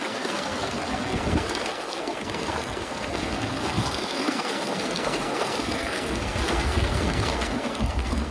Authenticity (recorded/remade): remade